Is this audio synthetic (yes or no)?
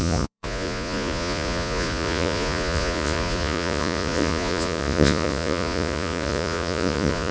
yes